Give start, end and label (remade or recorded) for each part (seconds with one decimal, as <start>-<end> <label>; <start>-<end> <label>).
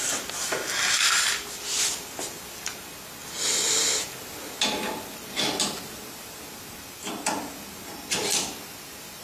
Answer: 0.0-9.2 recorded